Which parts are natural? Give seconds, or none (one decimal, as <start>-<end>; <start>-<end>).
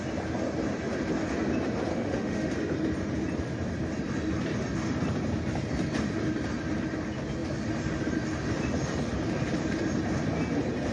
0.0-1.9; 2.5-10.9